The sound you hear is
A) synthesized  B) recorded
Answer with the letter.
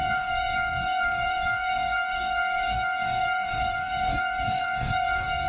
A